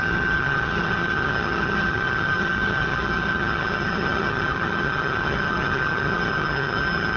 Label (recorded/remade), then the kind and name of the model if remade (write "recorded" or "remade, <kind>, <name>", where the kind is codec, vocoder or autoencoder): remade, vocoder, HiFi-GAN